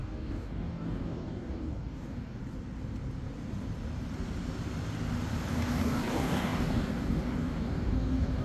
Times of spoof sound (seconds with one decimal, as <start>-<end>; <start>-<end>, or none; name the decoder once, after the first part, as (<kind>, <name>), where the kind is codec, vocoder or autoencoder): 0.0-2.4 (codec, DAC); 5.5-8.4